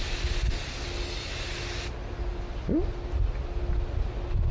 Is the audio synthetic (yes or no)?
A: no